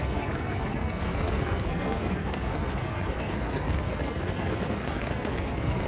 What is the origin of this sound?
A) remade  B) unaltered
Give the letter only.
A